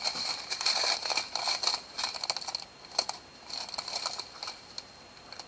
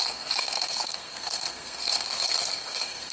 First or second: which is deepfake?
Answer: second